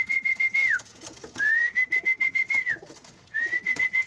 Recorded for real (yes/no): no